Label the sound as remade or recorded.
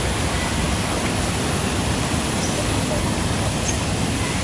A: recorded